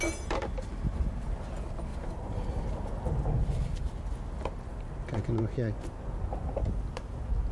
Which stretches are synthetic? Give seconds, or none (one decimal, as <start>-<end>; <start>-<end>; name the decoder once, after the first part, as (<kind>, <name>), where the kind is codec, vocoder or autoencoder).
1.9-2.5 (vocoder, BigVGAN v2); 3.4-4.1